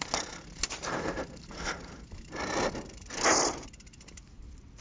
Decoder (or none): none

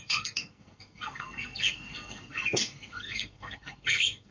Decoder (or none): codec, SNAC